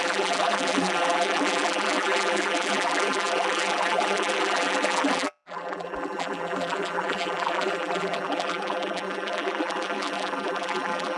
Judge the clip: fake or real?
fake